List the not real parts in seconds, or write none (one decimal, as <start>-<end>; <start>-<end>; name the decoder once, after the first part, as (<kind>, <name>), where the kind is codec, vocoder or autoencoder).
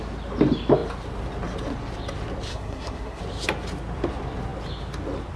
2.5-3.2 (codec, SNAC)